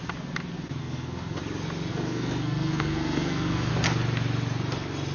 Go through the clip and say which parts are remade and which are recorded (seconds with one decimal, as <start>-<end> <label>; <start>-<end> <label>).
0.0-0.8 recorded; 0.8-1.4 remade; 1.4-1.9 recorded; 1.9-3.7 remade; 3.7-5.1 recorded